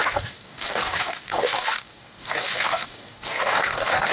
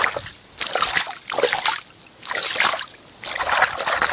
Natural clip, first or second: second